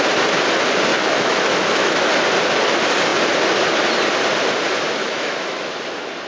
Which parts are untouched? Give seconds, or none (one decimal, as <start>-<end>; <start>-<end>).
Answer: 0.0-0.9; 2.1-5.0; 5.7-6.3